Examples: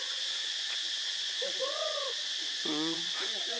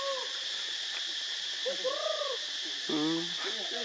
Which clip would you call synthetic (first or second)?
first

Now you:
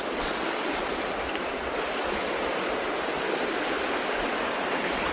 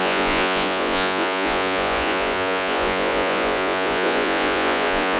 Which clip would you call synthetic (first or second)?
second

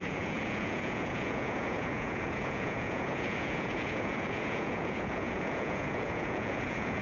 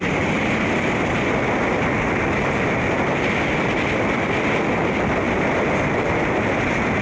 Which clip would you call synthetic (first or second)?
first